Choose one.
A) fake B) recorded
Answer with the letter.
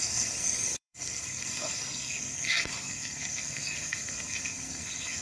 A